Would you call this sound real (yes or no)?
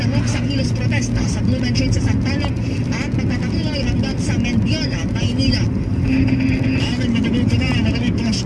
yes